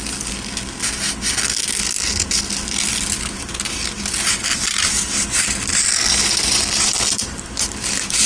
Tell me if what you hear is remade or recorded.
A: recorded